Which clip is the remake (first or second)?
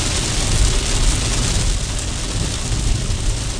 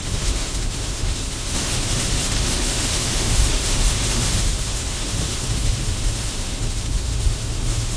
second